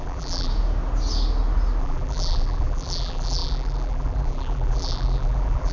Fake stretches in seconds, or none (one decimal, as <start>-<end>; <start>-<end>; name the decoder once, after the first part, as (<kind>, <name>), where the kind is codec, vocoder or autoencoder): 0.0-0.5 (vocoder, BigVGAN v2); 1.8-5.7